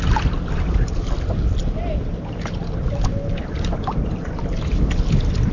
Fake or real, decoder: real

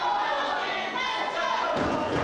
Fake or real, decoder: fake, vocoder, Vocos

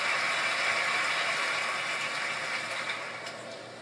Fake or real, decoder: real